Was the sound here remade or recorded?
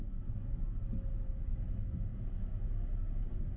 recorded